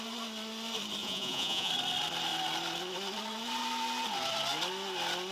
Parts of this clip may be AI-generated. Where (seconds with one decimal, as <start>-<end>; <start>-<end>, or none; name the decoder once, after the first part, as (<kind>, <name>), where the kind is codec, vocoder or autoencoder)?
1.0-1.7 (vocoder, Vocos)